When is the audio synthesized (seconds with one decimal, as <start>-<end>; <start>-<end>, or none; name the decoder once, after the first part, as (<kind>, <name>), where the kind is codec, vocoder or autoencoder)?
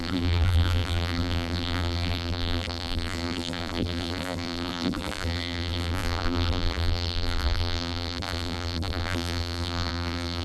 0.0-10.4 (vocoder, BigVGAN v2)